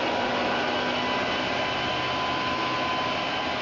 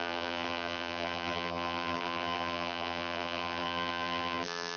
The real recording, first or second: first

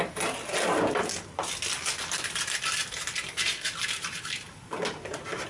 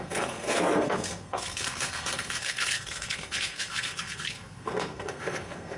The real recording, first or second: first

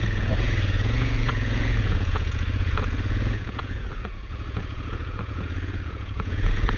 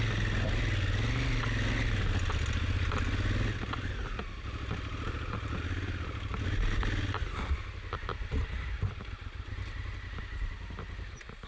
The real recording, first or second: second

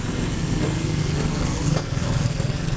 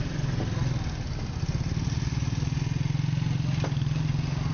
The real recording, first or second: second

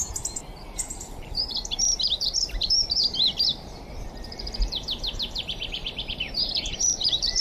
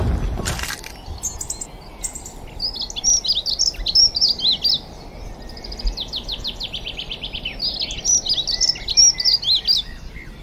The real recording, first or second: second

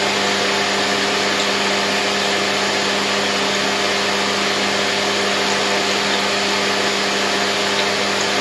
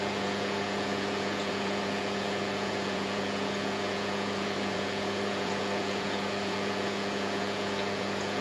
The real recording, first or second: first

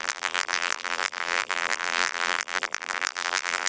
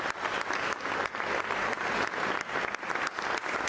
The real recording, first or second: second